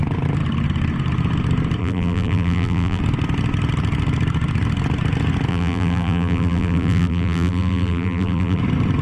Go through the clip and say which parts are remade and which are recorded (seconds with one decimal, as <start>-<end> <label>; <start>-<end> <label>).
0.0-1.8 recorded; 1.8-3.0 remade; 3.0-5.5 recorded; 5.5-8.6 remade; 8.6-9.0 recorded